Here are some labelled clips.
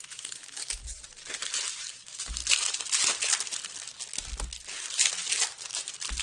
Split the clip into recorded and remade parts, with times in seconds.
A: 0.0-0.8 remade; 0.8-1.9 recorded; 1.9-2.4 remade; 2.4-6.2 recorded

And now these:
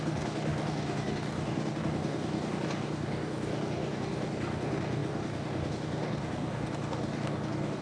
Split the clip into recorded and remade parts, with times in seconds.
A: 0.0-7.8 remade